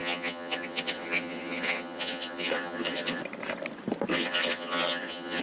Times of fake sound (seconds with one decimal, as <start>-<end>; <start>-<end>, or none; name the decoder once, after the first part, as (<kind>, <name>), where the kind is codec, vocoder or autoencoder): 0.0-3.2 (vocoder, HiFi-GAN); 4.1-5.4